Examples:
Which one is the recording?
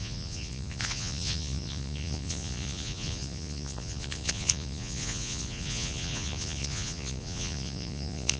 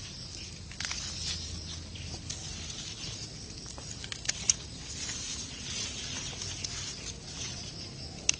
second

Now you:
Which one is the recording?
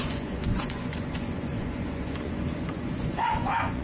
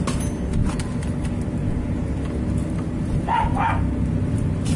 second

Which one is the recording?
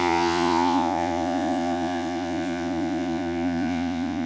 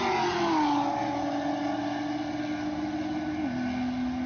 second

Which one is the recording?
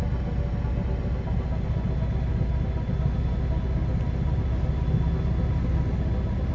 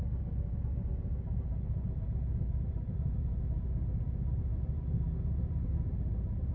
first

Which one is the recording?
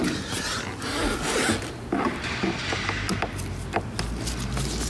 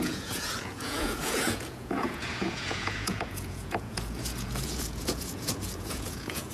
first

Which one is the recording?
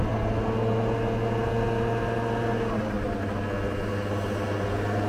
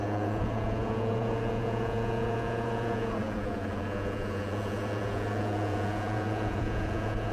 first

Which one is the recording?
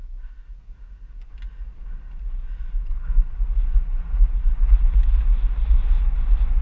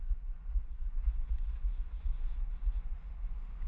first